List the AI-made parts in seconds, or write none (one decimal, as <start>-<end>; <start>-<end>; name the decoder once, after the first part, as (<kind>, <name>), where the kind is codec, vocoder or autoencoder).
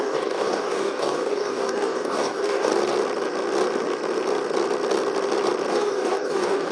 0.0-2.7 (codec, DAC); 5.7-6.7